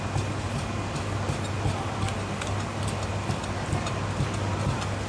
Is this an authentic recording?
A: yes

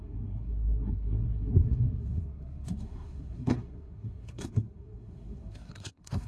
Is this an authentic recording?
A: no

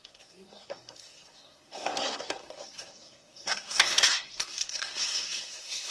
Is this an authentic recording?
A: no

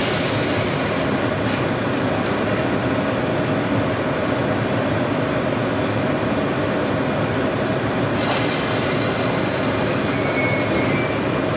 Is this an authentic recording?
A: yes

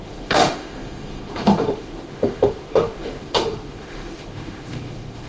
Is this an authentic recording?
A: no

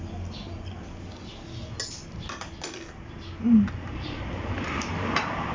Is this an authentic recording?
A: yes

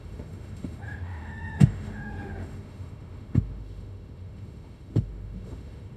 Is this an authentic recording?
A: no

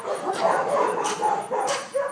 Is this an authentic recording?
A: no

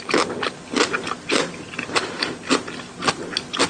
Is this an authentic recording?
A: yes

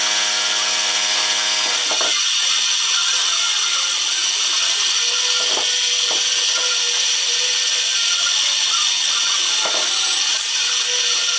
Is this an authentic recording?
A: yes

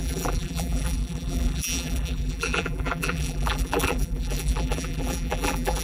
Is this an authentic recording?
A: no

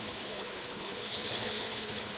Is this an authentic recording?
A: no